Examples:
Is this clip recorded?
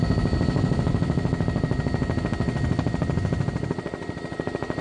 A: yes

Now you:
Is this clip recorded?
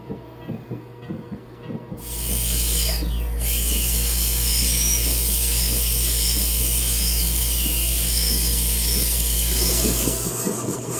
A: no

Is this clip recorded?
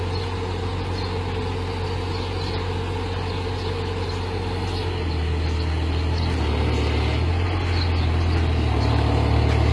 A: yes